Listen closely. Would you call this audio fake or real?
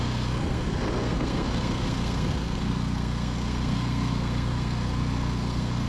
fake